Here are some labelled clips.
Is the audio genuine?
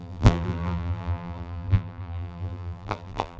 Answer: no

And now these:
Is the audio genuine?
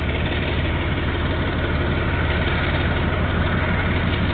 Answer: yes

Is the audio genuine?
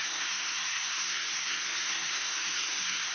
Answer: no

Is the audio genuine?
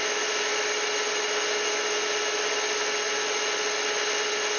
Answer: yes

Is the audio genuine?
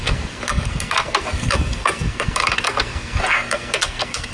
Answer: no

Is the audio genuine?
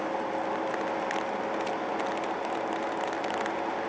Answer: yes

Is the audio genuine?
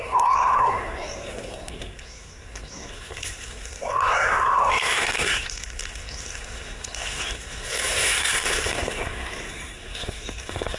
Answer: no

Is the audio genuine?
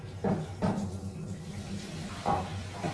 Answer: yes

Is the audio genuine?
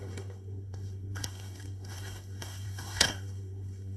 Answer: no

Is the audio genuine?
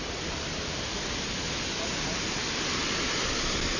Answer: yes